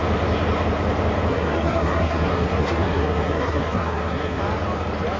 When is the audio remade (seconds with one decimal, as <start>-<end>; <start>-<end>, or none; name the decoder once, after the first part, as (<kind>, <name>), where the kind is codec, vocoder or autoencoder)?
1.3-4.4 (codec, SNAC)